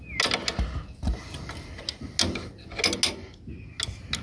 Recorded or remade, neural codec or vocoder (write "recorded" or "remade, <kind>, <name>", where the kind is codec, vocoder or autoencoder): recorded